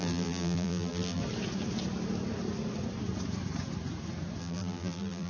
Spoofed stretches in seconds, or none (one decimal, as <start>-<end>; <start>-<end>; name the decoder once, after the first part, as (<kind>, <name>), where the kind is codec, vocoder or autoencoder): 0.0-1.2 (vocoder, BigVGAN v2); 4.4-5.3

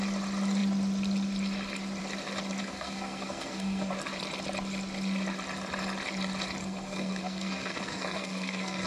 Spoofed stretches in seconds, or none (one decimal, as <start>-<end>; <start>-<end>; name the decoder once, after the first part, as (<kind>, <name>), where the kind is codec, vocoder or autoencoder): 2.6-3.9 (codec, SNAC); 6.6-8.9

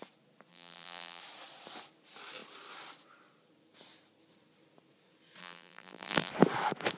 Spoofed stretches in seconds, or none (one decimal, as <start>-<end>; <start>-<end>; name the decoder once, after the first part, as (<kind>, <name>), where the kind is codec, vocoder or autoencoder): 0.5-1.2 (vocoder, BigVGAN v2); 5.4-6.3